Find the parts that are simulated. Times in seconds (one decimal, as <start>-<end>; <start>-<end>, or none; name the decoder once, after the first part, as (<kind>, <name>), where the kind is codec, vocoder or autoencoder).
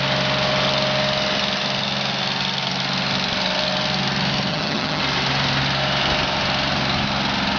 4.5-5.0 (vocoder, HiFi-GAN)